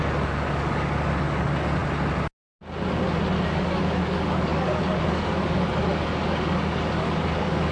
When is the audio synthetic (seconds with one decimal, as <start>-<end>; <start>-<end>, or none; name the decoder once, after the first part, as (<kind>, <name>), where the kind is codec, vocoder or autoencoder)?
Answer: 0.0-1.8 (codec, DAC); 3.5-7.7